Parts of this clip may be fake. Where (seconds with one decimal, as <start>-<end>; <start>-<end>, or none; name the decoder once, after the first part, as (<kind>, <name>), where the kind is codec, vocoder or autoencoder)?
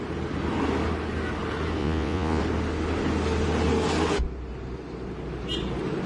1.8-2.4 (vocoder, Vocos)